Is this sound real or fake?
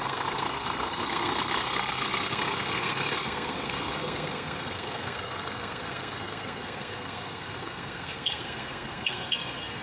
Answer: fake